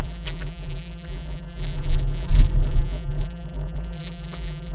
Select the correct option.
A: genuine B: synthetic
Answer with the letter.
B